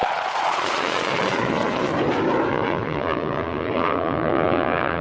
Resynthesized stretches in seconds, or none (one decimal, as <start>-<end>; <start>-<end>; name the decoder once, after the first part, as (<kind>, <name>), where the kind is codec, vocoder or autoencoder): 0.0-1.9 (vocoder, Vocos); 2.5-5.0